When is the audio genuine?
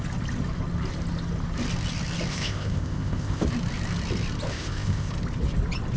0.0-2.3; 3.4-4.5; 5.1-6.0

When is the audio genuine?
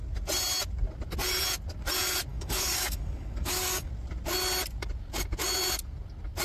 0.0-2.3; 3.9-6.4